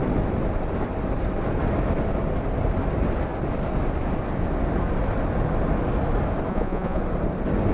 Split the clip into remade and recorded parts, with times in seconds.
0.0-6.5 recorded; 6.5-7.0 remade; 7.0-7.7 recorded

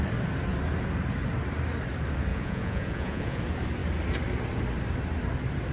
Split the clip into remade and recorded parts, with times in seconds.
0.0-2.3 recorded; 2.3-3.4 remade; 3.4-5.7 recorded

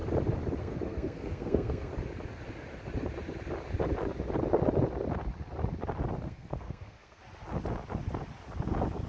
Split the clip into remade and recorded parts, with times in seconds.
0.0-0.6 recorded; 0.6-1.9 remade; 1.9-6.2 recorded; 6.2-7.2 remade; 7.2-9.1 recorded

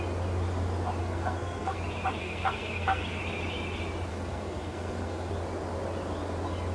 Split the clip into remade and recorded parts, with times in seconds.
0.0-1.0 recorded; 1.0-1.8 remade; 1.8-2.2 recorded; 2.2-3.2 remade; 3.2-4.1 recorded; 4.1-5.3 remade; 5.3-6.7 recorded

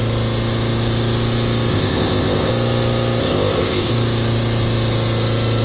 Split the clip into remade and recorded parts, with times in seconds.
0.0-1.7 recorded; 1.7-2.5 remade; 2.5-3.2 recorded; 3.2-3.9 remade; 3.9-5.6 recorded